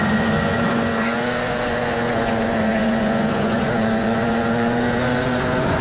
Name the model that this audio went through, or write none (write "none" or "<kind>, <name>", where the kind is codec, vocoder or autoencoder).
vocoder, Vocos